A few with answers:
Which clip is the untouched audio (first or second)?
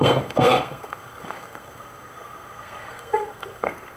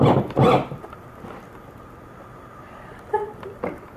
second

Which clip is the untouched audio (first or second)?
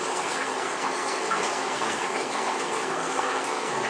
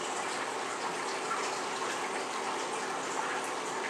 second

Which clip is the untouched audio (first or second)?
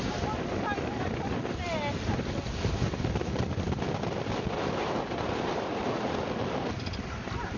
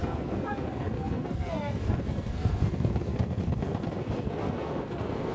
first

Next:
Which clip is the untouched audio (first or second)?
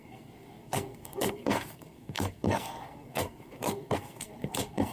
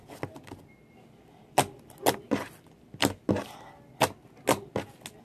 second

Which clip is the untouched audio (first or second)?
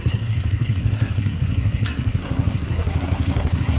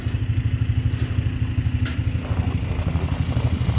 second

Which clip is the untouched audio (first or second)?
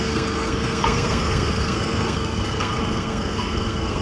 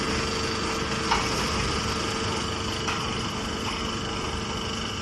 second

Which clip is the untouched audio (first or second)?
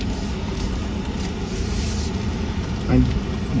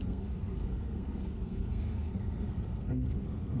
first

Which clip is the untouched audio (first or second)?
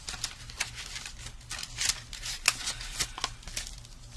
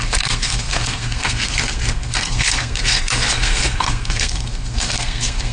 first